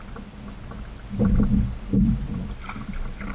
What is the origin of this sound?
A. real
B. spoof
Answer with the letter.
A